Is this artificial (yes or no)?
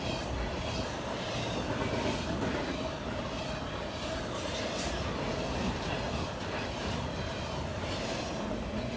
no